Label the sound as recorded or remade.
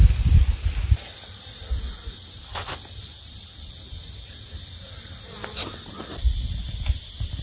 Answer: recorded